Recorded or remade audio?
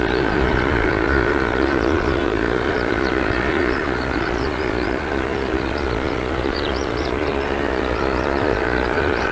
remade